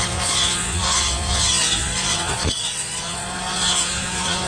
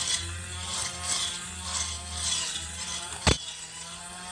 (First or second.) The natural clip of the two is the second